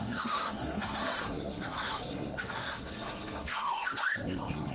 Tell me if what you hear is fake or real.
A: fake